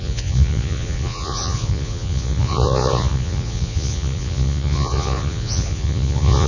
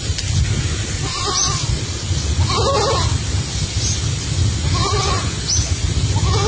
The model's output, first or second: first